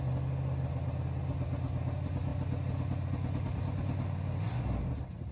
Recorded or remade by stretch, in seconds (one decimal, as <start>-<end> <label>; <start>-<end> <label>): 0.0-5.3 recorded